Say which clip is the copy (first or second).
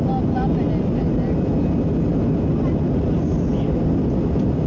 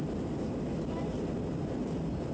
second